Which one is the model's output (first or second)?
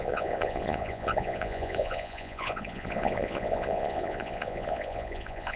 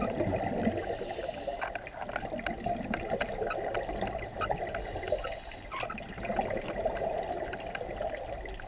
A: first